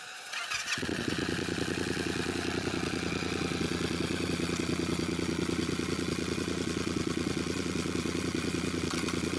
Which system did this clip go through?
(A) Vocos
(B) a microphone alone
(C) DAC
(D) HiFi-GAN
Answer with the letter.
A